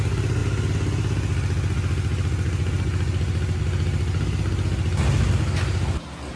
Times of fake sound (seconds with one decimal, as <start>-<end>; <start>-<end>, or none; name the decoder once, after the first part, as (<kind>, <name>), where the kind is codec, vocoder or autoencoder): none